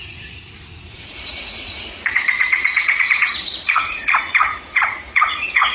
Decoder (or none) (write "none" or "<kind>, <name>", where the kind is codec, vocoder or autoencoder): vocoder, Vocos